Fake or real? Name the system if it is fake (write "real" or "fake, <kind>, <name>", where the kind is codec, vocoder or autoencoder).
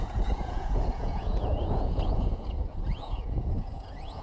fake, vocoder, Vocos